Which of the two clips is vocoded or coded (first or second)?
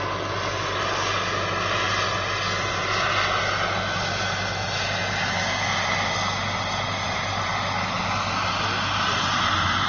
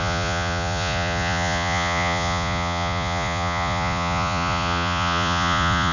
second